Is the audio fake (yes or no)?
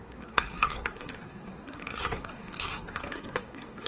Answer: yes